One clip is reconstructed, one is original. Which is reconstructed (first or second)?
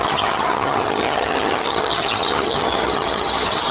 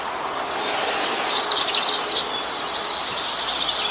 first